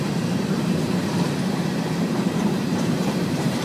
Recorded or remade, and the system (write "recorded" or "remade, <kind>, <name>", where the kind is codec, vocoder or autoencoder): remade, vocoder, BigVGAN v2